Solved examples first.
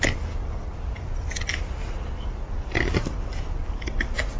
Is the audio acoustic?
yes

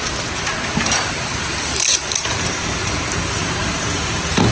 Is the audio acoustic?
no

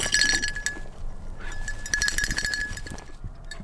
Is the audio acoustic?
yes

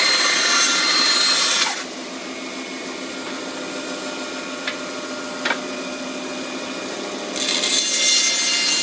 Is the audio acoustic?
yes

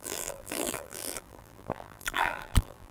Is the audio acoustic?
no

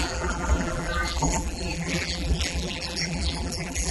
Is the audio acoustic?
no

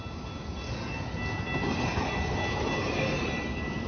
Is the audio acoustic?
yes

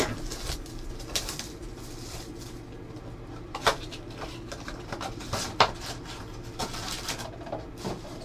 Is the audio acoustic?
yes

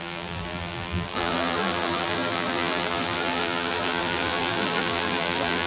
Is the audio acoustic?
no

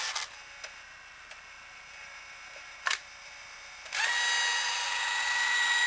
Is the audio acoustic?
yes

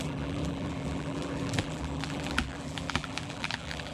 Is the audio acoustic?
no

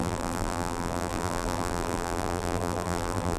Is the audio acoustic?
no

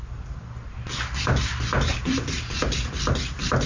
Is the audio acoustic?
yes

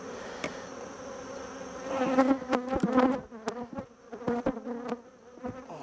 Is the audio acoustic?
yes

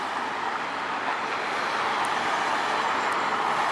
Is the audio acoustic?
yes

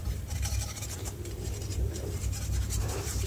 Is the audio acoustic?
no